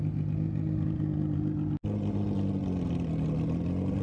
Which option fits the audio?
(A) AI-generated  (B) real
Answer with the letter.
B